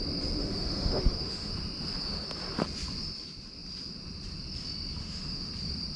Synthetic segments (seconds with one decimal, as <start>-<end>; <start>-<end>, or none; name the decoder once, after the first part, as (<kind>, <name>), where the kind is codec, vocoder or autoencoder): 0.4-1.5 (autoencoder, DAC-VAE); 5.0-5.5